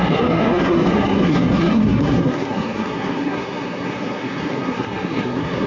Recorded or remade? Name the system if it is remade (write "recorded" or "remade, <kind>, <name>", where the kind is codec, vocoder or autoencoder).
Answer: remade, codec, SNAC